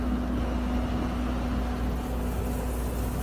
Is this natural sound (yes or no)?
yes